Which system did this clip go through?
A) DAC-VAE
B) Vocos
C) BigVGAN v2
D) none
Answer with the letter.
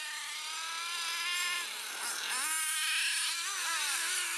D